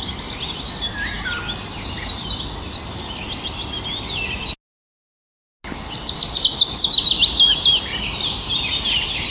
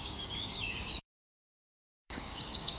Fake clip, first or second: second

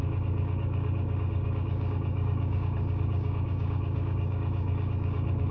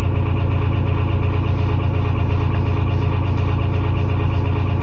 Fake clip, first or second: first